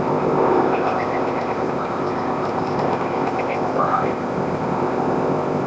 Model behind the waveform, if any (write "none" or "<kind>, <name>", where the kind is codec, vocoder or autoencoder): codec, ZipCodec